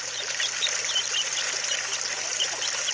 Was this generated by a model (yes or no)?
no